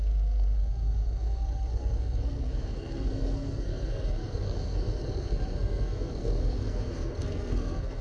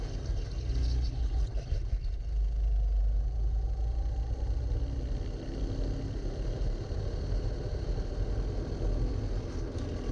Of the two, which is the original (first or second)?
second